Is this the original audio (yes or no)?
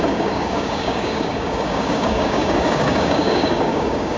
no